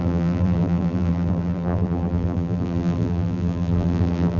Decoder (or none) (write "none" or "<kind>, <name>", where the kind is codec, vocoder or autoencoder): vocoder, BigVGAN v2